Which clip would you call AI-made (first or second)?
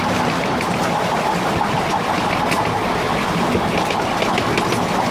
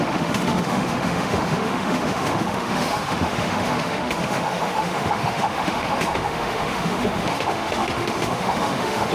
second